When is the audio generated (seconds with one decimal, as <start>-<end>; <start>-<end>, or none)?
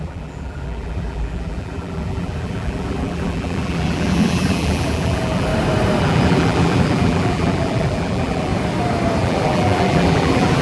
0.0-5.5; 6.0-8.5; 9.2-10.6